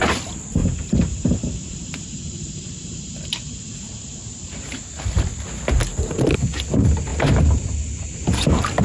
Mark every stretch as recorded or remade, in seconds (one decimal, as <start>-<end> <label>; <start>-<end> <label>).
0.0-0.6 recorded; 0.6-5.5 remade; 5.5-7.1 recorded; 7.1-8.8 remade